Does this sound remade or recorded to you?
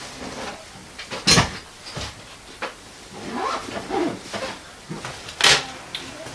recorded